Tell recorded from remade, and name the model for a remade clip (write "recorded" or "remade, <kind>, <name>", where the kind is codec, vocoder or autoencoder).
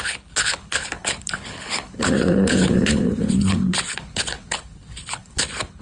remade, codec, HILCodec